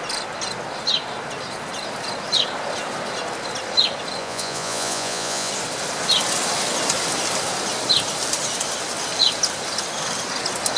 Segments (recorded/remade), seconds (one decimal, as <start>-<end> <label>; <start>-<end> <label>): 0.0-4.2 recorded; 4.2-5.5 remade; 5.5-10.8 recorded